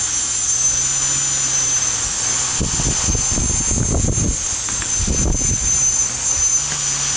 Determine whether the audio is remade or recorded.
recorded